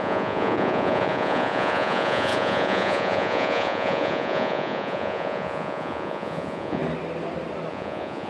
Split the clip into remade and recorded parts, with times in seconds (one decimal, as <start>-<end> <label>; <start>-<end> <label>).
0.0-6.8 remade; 6.8-7.7 recorded; 7.7-8.3 remade